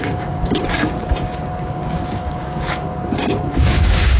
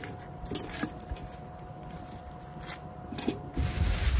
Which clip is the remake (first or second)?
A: first